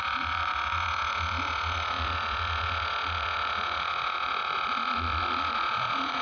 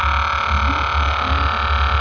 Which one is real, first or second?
second